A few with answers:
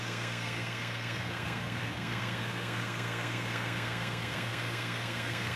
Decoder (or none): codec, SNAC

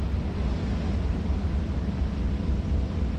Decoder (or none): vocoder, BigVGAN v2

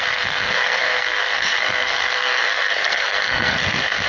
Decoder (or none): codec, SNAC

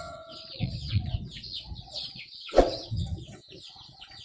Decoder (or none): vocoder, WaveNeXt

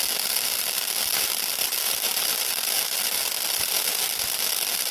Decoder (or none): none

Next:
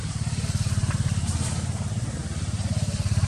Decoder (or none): vocoder, BigVGAN v2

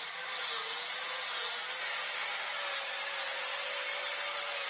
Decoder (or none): none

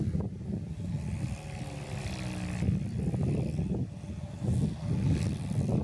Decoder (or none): none